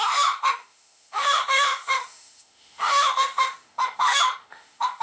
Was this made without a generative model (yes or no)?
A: no